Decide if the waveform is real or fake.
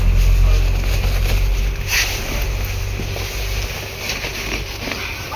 real